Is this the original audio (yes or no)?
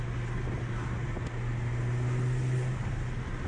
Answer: yes